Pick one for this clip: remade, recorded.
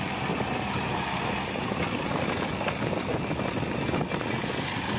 recorded